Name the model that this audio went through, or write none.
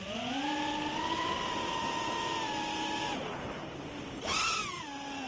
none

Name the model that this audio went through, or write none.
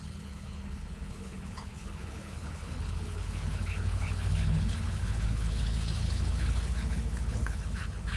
codec, HILCodec